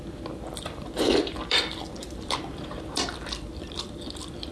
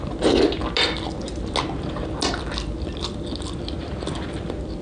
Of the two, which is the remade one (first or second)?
first